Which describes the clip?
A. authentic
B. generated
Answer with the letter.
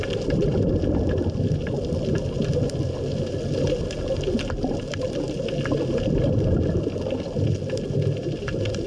A